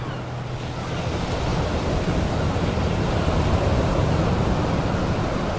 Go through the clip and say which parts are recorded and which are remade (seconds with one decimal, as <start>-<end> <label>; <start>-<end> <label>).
0.0-5.6 recorded